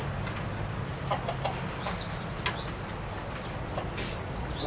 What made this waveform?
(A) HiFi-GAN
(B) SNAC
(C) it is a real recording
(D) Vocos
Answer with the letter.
C